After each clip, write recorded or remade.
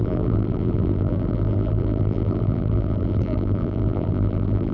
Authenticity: remade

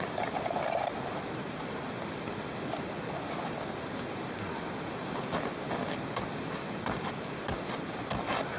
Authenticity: recorded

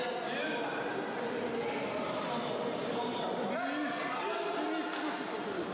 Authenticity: recorded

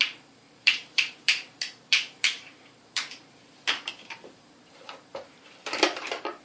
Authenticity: remade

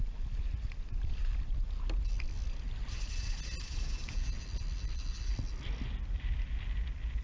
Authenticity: recorded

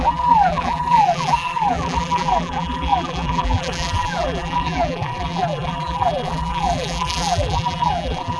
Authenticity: remade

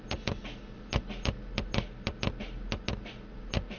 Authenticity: recorded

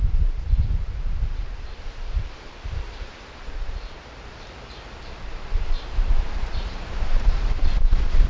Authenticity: remade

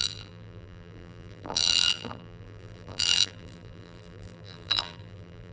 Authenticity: remade